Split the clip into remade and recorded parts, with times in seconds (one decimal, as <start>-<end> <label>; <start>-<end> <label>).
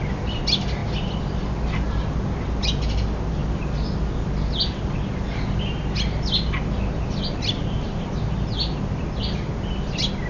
0.0-10.3 recorded